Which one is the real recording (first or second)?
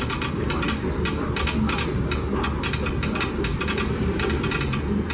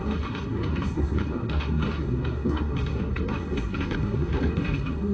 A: first